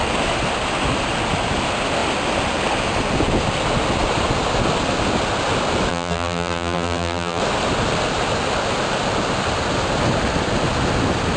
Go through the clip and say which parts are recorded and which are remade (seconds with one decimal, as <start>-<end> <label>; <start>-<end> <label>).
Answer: 0.0-5.9 recorded; 5.9-7.4 remade; 7.4-11.4 recorded